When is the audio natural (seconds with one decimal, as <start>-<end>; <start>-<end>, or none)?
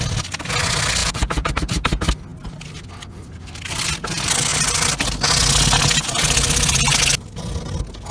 0.0-1.0; 1.5-8.1